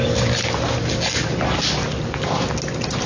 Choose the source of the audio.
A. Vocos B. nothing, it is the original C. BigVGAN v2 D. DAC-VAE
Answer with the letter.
B